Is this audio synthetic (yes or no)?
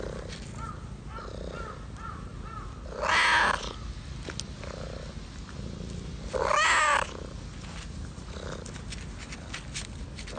no